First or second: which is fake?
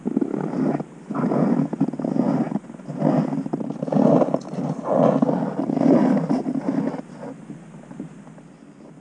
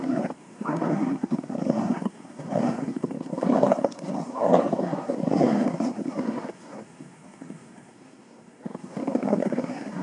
second